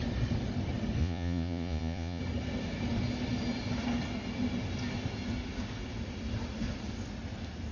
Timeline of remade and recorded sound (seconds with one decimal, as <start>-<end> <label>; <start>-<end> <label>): 0.0-1.0 recorded; 1.0-2.2 remade; 2.2-7.7 recorded